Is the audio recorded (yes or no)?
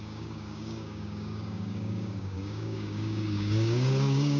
no